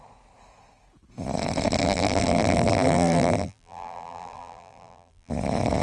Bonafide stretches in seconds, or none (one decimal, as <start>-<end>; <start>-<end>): 0.0-1.8; 5.3-5.8